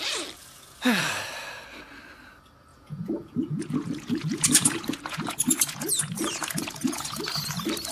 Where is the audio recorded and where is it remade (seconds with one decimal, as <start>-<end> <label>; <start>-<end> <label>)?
0.0-0.4 recorded; 0.4-1.0 remade; 1.0-2.7 recorded; 2.7-7.2 remade; 7.2-7.9 recorded